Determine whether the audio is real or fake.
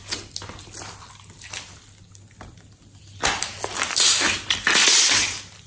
real